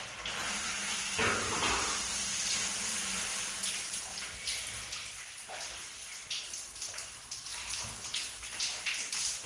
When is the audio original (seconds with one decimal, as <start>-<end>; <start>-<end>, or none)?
0.0-0.4; 2.5-2.9; 4.3-9.5